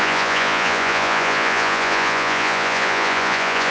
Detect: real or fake fake